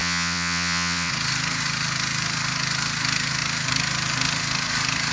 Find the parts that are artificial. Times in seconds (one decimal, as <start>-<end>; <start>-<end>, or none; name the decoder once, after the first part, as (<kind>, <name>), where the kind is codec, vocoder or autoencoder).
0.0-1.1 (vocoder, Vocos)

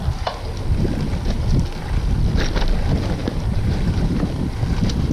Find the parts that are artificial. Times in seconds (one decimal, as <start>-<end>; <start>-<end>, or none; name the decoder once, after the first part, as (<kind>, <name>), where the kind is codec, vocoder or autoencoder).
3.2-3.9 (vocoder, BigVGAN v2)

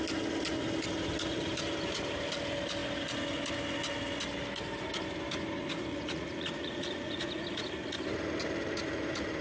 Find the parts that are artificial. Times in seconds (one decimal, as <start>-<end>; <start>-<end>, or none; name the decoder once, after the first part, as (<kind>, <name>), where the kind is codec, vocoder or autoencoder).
5.9-7.7 (vocoder, Vocos)